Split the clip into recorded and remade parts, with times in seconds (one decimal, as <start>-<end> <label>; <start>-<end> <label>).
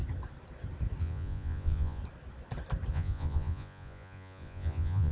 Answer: 0.0-1.0 recorded; 1.0-2.0 remade; 2.0-2.9 recorded; 2.9-5.1 remade